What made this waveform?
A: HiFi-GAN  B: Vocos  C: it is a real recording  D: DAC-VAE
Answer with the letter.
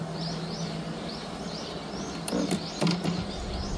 C